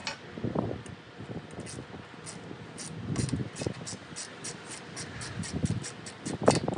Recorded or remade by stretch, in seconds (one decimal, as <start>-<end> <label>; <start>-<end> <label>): 0.0-6.8 recorded